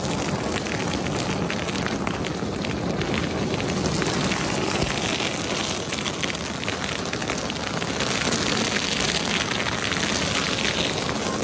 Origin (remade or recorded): recorded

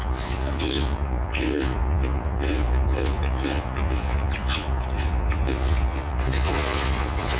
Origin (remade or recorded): remade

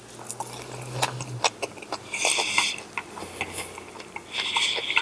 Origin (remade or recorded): recorded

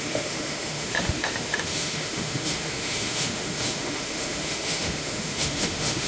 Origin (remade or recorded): remade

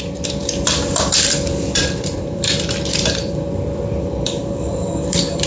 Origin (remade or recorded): remade